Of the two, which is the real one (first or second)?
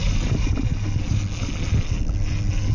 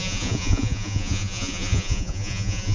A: first